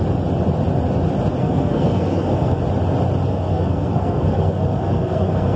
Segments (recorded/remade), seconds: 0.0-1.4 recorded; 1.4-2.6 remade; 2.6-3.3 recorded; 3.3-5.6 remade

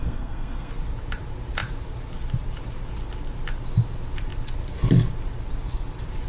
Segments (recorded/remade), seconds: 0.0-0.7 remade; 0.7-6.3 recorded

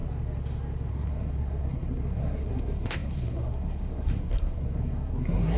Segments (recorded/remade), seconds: 0.0-0.9 recorded; 0.9-5.6 remade

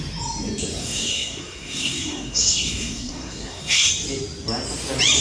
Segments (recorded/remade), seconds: 0.0-0.8 recorded; 0.8-3.9 remade; 3.9-5.2 recorded